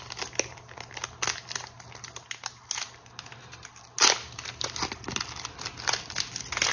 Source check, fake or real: real